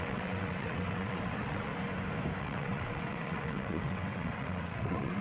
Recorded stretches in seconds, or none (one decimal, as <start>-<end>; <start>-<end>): 1.7-2.4